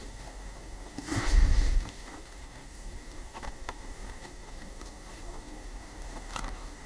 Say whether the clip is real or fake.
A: fake